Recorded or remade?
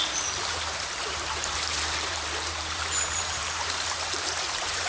remade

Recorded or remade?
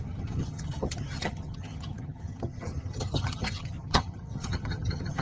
remade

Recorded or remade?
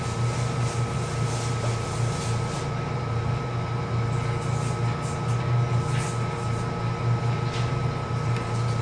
recorded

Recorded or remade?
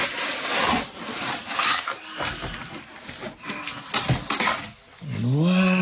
recorded